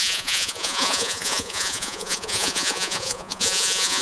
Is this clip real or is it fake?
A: fake